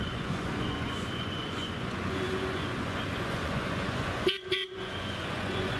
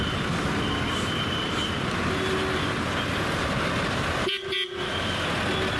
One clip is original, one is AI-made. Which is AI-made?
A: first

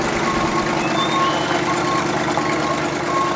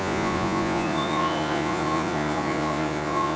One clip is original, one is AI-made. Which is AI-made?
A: second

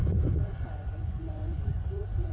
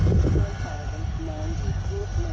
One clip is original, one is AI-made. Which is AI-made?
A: first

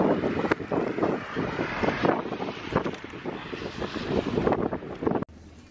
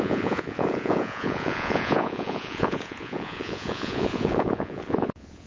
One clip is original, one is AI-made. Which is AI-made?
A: second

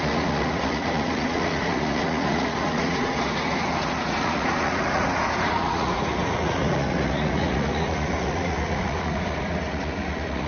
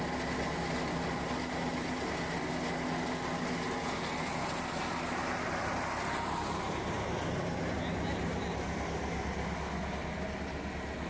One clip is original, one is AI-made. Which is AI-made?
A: first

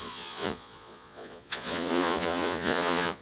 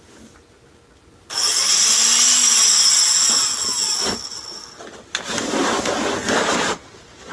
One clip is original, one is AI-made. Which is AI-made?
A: first